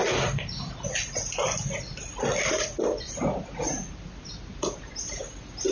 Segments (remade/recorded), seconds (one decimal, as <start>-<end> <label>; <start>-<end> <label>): 0.0-5.7 recorded